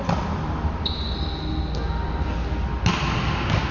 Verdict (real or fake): real